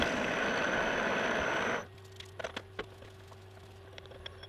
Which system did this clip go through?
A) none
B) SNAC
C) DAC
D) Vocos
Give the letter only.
A